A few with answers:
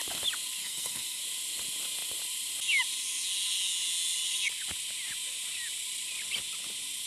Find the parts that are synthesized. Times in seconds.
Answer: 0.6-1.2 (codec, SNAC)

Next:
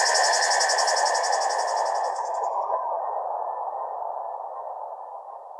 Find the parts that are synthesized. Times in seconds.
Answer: 2.1-3.0 (codec, SNAC)

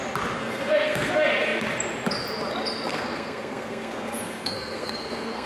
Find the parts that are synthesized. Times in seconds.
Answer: 0.4-1.1 (codec, SNAC); 2.9-5.5

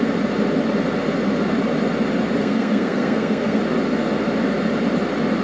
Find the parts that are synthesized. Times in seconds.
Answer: 2.4-3.6 (codec, SNAC)

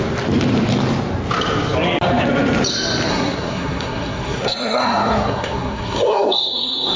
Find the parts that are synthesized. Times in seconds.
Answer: 3.1-7.0 (codec, SNAC)

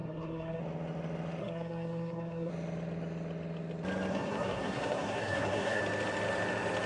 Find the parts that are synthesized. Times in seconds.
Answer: 0.0-0.6 (codec, SNAC); 1.4-2.5; 4.1-5.8

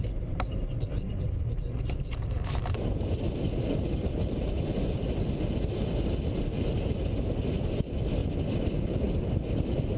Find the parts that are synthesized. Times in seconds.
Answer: none